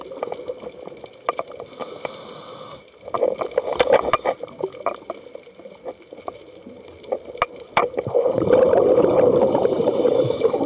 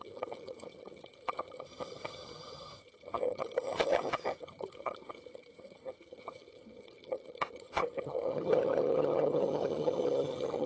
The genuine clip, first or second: first